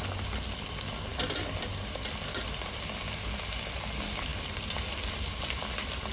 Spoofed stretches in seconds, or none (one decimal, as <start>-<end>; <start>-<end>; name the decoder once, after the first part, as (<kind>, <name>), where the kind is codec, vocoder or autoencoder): none